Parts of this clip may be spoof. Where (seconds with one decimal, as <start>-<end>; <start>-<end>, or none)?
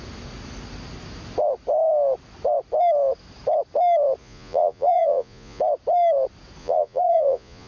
4.2-5.6; 6.6-7.7